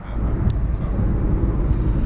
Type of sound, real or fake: real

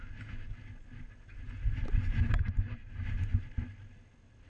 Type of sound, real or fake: real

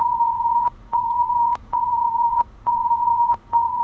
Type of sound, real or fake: fake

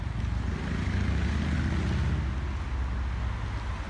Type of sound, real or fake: real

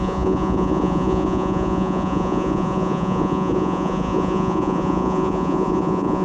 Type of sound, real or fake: fake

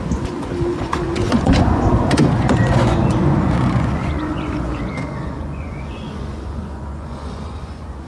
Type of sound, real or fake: fake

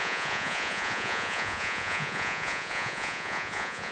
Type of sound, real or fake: fake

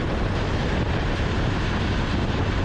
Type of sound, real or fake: real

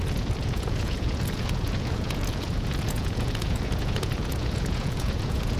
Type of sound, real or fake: fake